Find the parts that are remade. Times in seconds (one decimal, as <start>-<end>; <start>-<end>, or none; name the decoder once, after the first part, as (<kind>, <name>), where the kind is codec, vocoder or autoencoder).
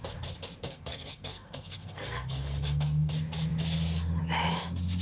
0.6-3.1 (codec, SNAC)